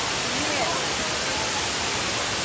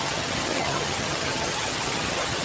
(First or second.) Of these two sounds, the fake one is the second